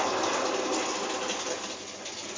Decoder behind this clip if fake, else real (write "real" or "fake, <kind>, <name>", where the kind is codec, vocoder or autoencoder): real